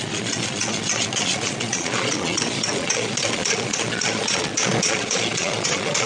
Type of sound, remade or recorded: remade